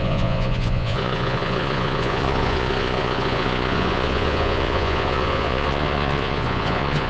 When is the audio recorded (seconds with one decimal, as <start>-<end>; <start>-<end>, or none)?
none